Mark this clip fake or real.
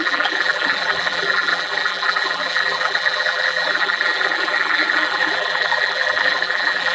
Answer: fake